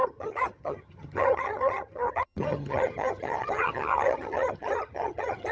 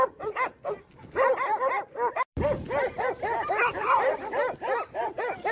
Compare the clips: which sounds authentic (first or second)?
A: second